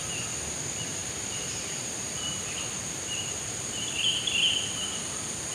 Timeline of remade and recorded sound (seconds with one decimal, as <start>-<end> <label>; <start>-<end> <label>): 0.0-1.0 recorded; 1.0-4.1 remade; 4.1-5.5 recorded